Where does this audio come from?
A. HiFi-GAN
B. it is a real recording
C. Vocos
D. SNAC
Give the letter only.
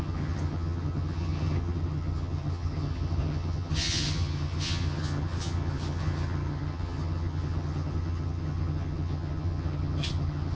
A